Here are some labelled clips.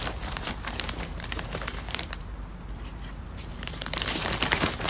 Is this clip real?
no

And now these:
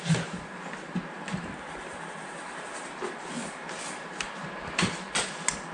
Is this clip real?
yes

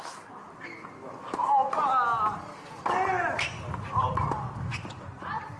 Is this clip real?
yes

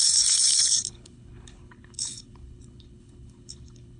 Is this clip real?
no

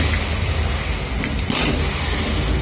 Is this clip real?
yes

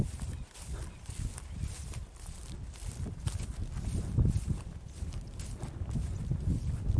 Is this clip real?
no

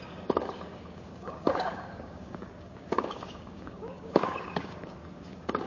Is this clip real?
no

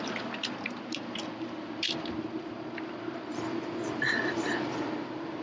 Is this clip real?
no